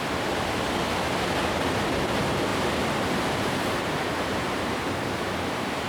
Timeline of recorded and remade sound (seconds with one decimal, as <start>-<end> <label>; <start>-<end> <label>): 0.0-5.9 remade